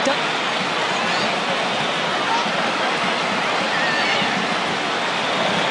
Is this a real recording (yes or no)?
yes